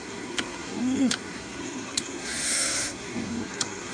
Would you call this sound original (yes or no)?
no